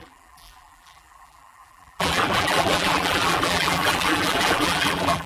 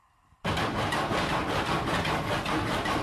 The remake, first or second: first